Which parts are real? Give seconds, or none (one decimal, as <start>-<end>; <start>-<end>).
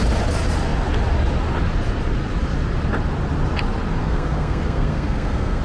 0.0-4.0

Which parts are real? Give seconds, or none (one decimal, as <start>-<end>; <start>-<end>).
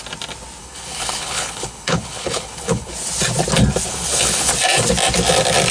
0.0-0.6; 2.9-3.9; 4.5-5.7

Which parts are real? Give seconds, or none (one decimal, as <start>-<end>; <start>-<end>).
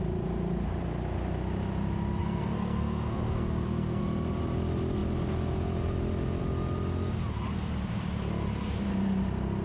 0.0-2.2; 4.0-9.6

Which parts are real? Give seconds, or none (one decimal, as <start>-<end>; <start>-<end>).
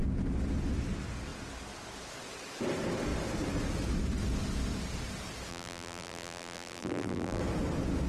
0.0-5.5; 7.4-8.1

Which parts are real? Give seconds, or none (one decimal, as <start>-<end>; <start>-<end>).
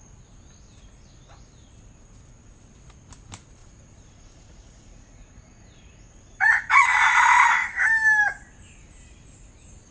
0.0-3.6; 7.0-9.9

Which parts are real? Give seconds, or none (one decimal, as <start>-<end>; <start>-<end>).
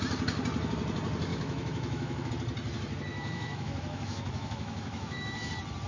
0.0-1.3; 2.3-3.1; 5.5-5.9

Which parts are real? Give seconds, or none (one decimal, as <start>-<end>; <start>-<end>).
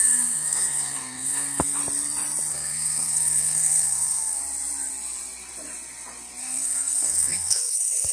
1.8-2.5; 4.4-6.4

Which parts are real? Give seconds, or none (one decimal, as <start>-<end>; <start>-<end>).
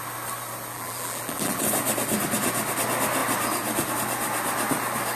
0.0-0.7; 1.6-5.2